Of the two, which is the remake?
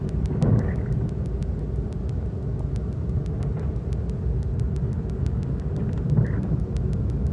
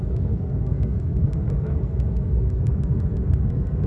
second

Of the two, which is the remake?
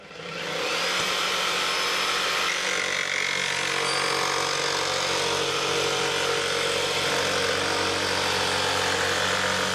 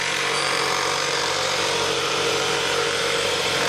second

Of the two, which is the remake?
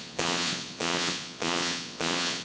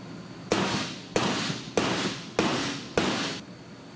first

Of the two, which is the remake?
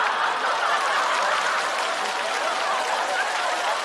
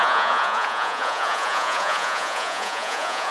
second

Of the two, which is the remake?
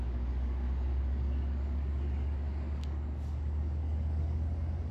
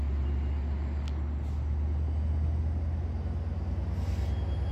first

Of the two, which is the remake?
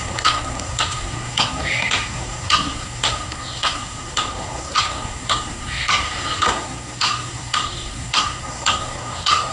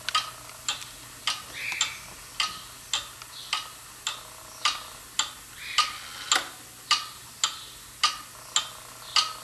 first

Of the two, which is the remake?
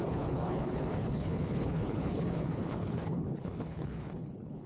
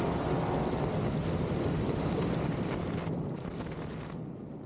first